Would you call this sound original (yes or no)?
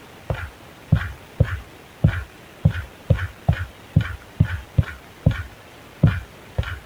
yes